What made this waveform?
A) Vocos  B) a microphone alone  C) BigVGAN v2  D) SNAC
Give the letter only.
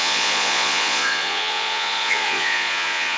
A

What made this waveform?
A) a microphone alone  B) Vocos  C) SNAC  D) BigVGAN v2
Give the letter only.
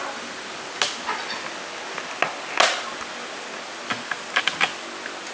A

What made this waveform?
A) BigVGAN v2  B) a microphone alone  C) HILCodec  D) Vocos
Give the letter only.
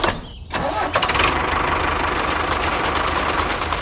B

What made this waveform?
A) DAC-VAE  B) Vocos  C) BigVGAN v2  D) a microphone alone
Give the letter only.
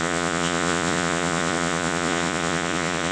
B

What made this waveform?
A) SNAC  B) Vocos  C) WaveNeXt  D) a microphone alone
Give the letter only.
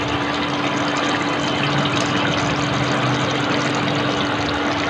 D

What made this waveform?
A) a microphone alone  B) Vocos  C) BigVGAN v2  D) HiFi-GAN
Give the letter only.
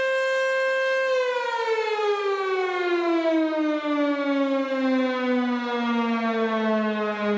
A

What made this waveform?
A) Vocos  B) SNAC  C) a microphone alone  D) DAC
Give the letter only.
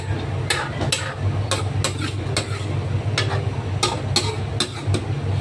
C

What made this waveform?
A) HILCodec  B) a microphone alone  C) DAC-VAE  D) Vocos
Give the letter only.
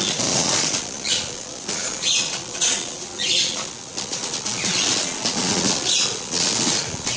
D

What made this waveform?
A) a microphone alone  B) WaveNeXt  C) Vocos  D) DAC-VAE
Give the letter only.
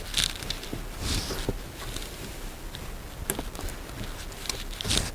A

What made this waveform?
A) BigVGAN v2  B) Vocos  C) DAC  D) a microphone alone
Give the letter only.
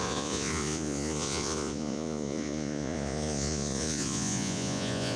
B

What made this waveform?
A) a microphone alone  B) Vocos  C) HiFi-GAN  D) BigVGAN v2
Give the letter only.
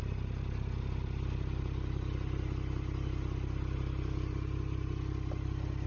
A